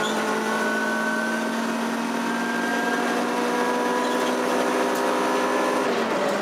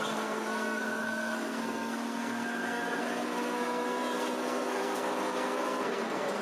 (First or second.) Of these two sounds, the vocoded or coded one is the second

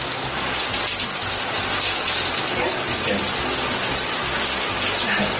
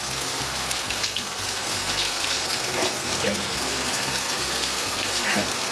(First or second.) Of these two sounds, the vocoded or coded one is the second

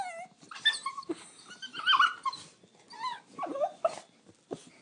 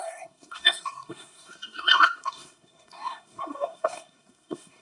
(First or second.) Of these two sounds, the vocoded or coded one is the second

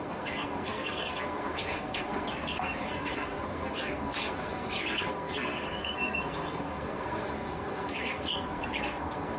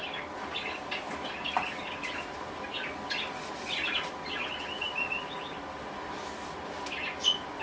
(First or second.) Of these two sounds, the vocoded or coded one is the first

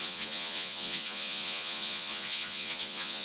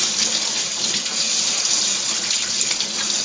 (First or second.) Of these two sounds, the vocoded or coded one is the first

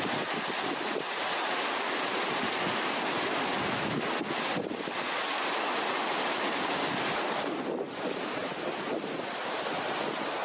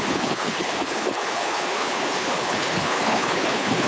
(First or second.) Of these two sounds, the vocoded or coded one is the second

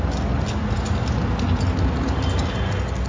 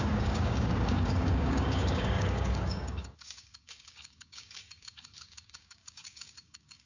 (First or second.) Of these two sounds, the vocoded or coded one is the second